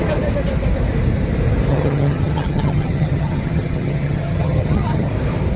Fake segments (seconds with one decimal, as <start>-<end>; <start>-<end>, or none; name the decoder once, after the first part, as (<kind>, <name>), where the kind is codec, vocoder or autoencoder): 1.7-5.1 (vocoder, HiFi-GAN)